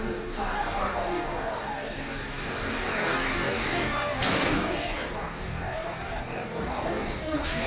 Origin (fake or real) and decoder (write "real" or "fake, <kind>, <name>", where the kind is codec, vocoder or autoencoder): fake, codec, DAC